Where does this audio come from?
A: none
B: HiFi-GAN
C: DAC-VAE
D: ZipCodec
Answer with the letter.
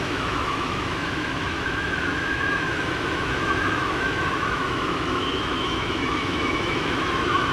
C